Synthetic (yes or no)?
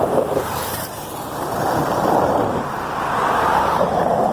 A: yes